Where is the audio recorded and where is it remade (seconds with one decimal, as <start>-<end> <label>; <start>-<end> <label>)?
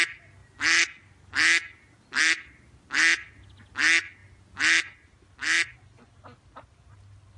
0.0-7.4 recorded